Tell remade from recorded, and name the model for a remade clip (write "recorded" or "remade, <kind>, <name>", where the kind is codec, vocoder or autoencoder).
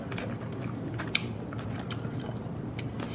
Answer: recorded